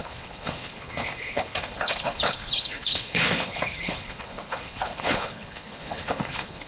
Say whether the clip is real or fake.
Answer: fake